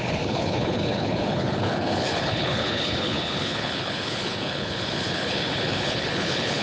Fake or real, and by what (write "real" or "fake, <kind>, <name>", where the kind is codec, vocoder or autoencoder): fake, codec, HILCodec